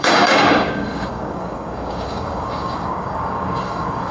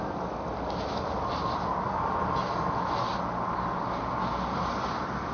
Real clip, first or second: second